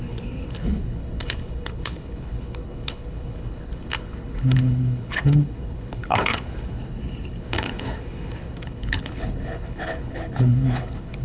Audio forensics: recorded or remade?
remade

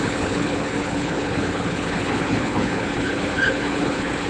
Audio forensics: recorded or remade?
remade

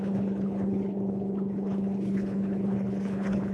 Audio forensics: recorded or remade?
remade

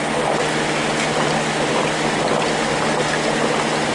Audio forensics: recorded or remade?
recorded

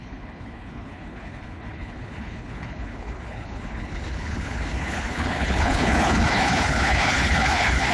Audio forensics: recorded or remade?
remade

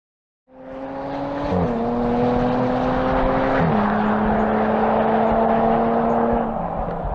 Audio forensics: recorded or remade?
recorded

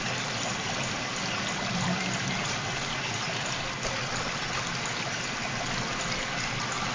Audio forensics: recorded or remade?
recorded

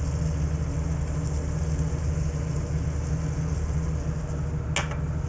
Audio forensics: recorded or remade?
recorded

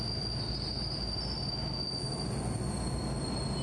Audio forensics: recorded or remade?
recorded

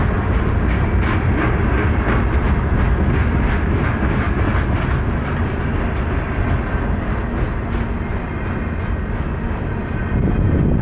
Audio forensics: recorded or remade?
recorded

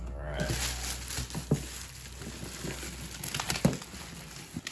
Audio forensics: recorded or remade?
recorded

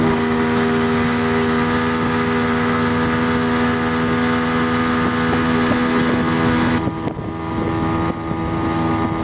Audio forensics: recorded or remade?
recorded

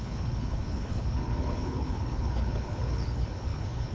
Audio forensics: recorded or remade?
remade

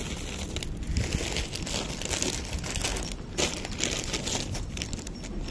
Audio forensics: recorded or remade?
recorded